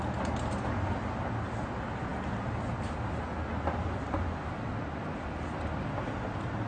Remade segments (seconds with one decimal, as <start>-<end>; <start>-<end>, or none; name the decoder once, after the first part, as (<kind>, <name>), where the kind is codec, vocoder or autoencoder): none